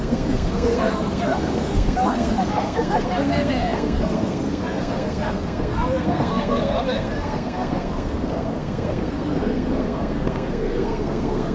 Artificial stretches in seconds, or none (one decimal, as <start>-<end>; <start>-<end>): 0.0-11.5